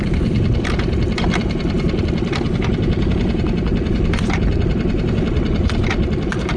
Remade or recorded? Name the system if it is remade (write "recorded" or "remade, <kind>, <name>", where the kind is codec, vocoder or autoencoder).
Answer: recorded